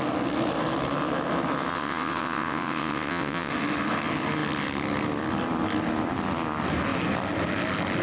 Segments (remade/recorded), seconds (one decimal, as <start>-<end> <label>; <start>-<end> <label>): 0.0-1.7 recorded; 1.7-3.5 remade; 3.5-8.0 recorded